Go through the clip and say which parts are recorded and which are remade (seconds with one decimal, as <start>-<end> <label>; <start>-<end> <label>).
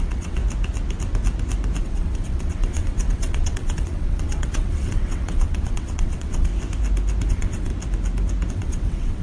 0.0-0.4 remade; 0.4-1.8 recorded; 1.8-6.5 remade; 6.5-7.3 recorded; 7.3-7.7 remade; 7.7-8.5 recorded; 8.5-9.2 remade